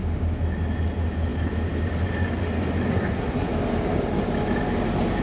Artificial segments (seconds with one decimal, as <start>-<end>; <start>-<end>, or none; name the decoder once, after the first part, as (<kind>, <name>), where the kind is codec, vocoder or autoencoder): 2.9-3.5 (codec, SNAC)

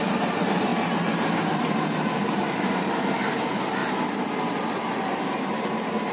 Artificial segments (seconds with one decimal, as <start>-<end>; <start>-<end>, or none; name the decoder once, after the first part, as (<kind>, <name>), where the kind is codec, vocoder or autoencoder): 0.0-0.7 (vocoder, BigVGAN v2); 1.5-3.8; 4.9-6.1

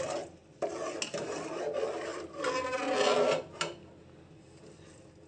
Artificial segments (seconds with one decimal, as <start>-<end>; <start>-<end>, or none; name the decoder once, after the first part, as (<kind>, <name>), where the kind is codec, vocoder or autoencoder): none